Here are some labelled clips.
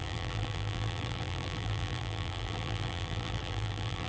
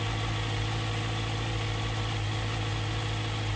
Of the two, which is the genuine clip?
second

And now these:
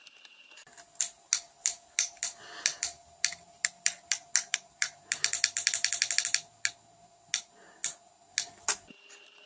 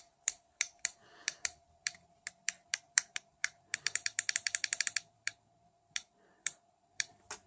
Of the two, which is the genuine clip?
first